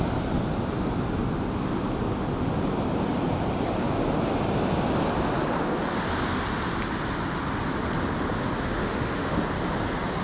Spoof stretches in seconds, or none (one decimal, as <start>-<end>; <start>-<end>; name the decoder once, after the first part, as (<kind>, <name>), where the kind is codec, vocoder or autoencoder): 8.8-9.3 (autoencoder, DAC-VAE)